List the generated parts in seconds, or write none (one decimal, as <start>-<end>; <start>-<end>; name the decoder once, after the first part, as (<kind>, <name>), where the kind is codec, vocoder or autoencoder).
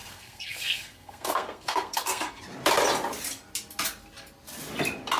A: 0.0-2.4 (codec, SNAC)